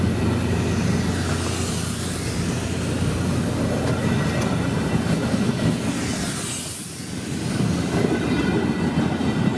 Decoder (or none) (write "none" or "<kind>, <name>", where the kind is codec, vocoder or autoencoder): none